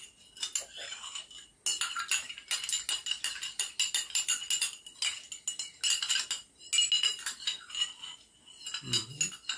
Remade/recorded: recorded